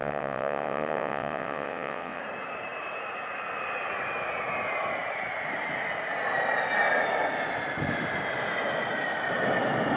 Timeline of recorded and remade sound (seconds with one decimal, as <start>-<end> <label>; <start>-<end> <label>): 0.0-2.2 remade; 2.2-10.0 recorded